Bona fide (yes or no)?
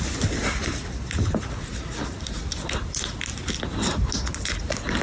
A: yes